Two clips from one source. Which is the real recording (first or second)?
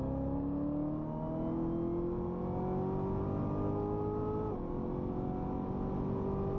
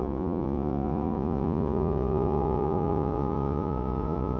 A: first